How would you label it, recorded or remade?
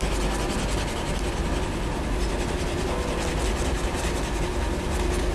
recorded